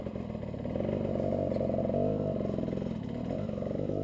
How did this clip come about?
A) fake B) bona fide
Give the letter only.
B